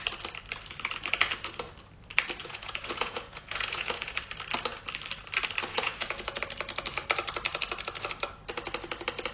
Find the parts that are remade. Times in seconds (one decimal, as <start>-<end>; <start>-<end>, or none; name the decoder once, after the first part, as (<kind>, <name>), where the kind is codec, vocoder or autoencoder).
2.4-4.2 (vocoder, Vocos); 5.7-6.4